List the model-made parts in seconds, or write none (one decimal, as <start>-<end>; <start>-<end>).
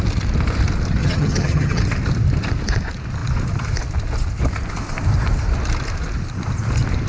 1.0-1.8